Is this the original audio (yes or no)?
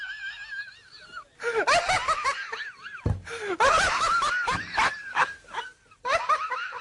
yes